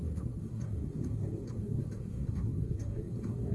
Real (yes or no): no